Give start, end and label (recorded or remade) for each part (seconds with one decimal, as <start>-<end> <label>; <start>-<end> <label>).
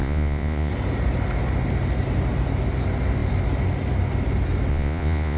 0.0-0.7 remade; 0.7-4.7 recorded; 4.7-5.4 remade